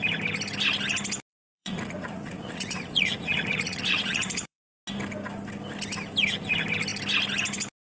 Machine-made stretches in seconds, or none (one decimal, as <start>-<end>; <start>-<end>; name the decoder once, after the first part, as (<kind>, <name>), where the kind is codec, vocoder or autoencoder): 1.3-4.6 (vocoder, Vocos)